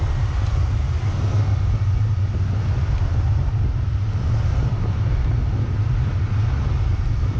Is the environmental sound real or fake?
real